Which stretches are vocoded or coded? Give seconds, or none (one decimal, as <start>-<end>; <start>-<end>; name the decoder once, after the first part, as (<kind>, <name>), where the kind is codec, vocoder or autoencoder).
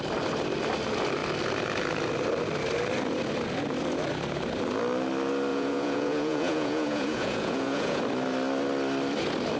5.5-8.0 (vocoder, Vocos)